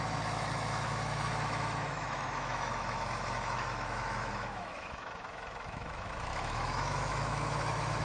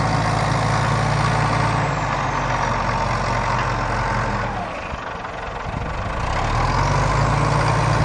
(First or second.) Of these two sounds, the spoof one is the first